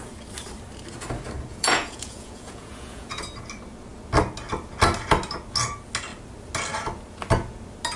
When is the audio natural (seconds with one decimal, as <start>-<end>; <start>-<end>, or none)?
0.0-1.5; 3.2-8.0